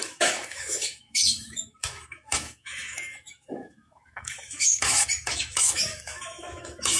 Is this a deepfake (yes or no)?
yes